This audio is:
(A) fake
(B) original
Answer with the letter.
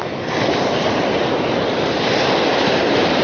B